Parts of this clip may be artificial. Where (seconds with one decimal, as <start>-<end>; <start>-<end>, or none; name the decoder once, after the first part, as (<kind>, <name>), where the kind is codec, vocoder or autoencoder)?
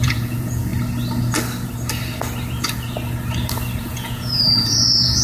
0.0-0.7 (vocoder, Vocos); 3.8-5.2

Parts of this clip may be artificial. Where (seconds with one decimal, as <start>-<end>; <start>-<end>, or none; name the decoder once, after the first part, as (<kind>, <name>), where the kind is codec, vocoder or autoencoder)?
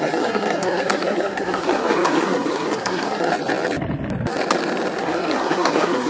0.0-3.3 (codec, SNAC); 5.0-6.1